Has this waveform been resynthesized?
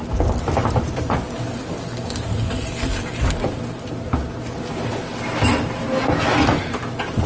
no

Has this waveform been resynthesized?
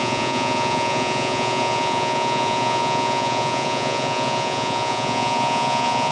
yes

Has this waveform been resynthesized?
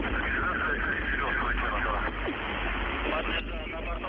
no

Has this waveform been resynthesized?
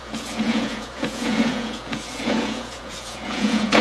yes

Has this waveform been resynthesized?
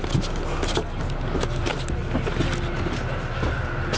no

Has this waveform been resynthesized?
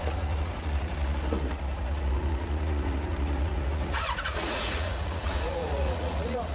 yes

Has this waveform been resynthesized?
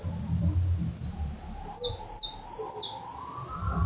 no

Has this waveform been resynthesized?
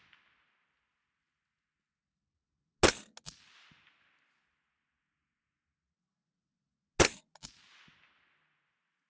no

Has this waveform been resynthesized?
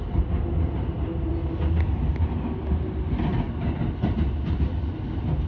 no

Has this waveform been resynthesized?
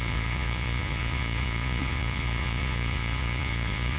yes